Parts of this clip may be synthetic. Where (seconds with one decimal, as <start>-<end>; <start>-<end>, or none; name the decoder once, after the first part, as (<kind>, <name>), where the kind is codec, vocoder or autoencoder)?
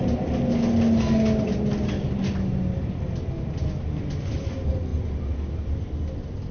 none